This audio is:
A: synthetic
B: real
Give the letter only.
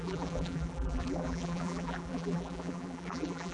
A